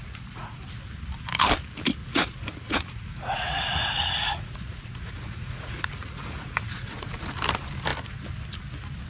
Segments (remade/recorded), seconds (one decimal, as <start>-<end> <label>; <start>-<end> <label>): 0.0-0.6 remade; 0.6-2.0 recorded; 2.0-7.2 remade; 7.2-9.1 recorded